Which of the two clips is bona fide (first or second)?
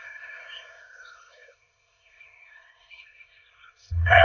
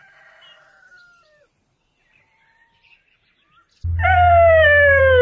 second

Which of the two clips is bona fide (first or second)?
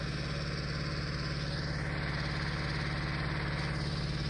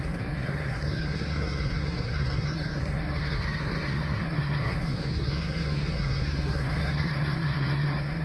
first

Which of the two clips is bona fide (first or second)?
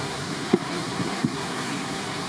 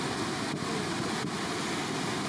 second